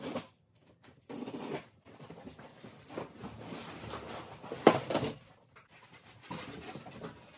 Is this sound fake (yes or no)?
no